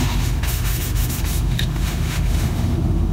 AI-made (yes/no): yes